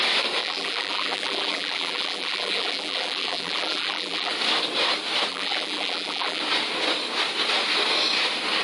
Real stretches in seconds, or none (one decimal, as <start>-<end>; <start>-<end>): 0.0-0.4; 4.3-5.3; 6.4-8.6